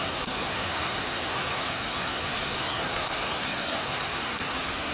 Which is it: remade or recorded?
remade